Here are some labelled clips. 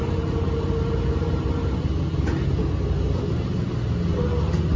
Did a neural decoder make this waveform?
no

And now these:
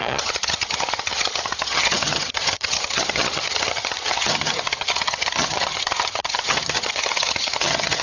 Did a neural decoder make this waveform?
yes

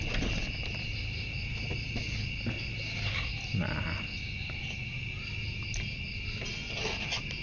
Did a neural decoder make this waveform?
no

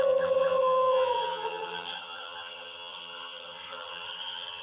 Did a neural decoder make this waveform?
yes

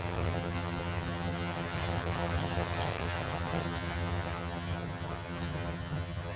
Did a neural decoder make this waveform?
yes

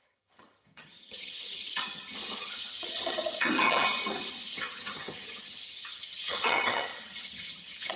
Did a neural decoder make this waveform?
yes